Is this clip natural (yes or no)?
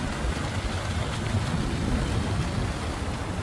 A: yes